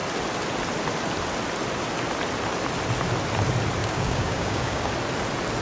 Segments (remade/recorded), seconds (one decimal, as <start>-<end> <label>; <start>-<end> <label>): 0.0-3.8 recorded; 3.8-4.9 remade; 4.9-5.6 recorded